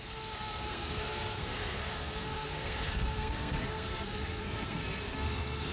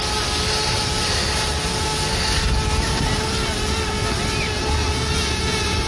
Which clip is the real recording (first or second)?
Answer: second